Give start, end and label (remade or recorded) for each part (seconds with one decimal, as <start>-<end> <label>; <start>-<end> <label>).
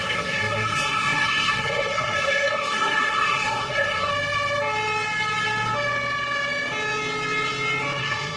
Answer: 0.0-4.1 remade; 4.1-8.0 recorded; 8.0-8.4 remade